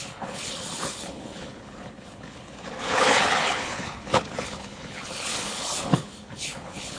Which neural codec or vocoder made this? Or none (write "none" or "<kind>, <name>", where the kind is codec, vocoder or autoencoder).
codec, HILCodec